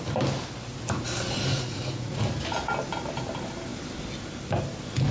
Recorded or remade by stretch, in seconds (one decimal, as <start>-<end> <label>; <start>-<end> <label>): 0.0-1.5 recorded; 1.5-2.2 remade; 2.2-5.1 recorded